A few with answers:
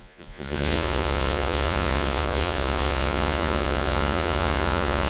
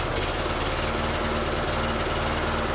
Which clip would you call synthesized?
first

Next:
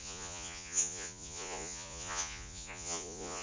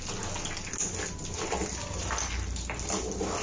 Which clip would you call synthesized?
first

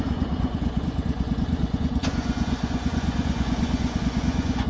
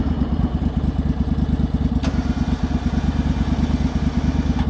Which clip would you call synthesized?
first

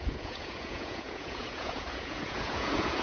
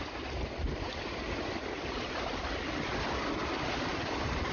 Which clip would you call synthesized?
first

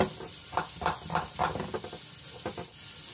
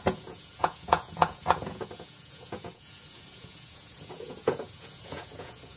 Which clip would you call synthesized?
second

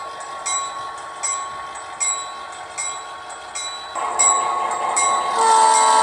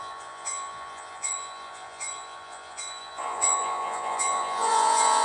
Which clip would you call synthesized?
second